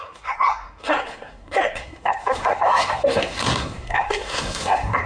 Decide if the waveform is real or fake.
fake